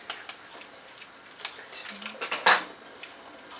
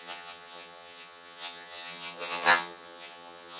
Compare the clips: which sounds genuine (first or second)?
first